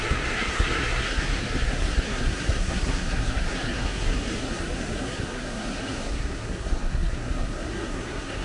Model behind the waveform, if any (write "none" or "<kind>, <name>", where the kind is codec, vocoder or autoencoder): codec, SNAC